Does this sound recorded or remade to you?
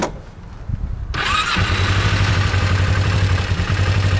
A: remade